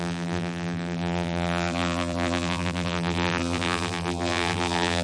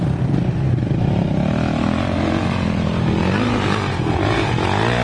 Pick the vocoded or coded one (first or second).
first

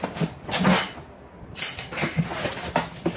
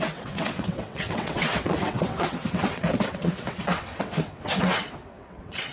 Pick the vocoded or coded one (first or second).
second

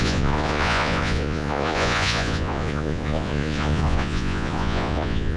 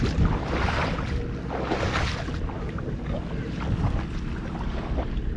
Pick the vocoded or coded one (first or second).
first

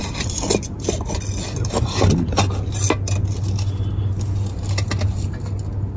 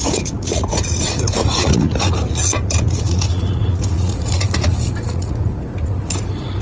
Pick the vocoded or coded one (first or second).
second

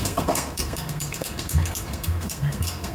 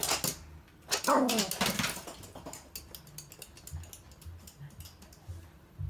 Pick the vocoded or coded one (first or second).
first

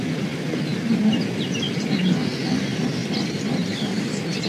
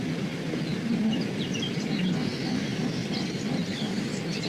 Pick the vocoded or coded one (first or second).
second